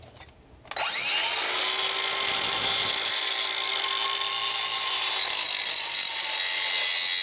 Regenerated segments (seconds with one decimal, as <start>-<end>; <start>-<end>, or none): none